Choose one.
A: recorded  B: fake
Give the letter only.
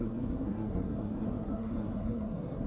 B